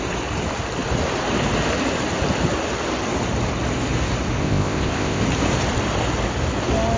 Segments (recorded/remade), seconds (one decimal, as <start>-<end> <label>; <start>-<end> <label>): 0.0-4.4 recorded; 4.4-5.2 remade; 5.2-7.0 recorded